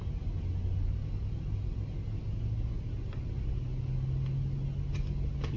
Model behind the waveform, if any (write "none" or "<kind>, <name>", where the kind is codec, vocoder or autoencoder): none